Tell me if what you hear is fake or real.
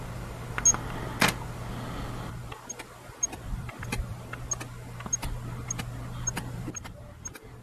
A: real